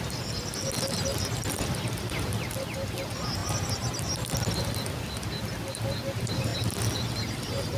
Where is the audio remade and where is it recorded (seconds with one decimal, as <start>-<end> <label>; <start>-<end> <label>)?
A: 0.0-3.4 recorded; 3.4-4.3 remade; 4.3-7.8 recorded

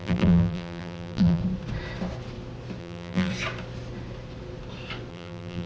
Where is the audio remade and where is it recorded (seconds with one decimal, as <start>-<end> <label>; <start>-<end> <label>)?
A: 0.0-1.4 remade; 1.4-2.8 recorded; 2.8-3.3 remade; 3.3-5.1 recorded; 5.1-5.7 remade

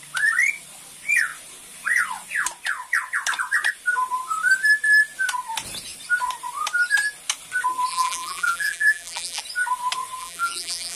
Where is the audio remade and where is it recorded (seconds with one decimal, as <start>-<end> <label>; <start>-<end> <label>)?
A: 0.0-7.9 recorded; 7.9-9.4 remade; 9.4-10.2 recorded; 10.2-11.0 remade

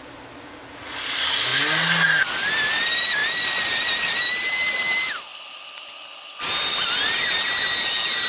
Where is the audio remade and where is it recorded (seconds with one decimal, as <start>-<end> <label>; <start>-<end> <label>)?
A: 0.0-8.3 recorded

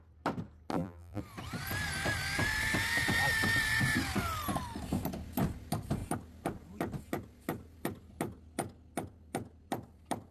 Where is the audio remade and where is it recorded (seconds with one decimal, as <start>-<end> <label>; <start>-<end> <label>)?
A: 0.0-0.7 recorded; 0.7-1.2 remade; 1.2-10.3 recorded

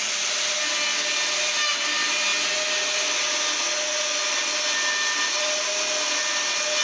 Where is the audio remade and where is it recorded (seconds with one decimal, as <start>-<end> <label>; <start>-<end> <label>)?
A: 0.0-0.7 remade; 0.7-6.8 recorded

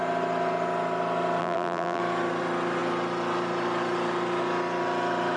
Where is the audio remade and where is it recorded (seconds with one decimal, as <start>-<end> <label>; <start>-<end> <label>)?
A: 0.0-1.4 recorded; 1.4-2.0 remade; 2.0-5.4 recorded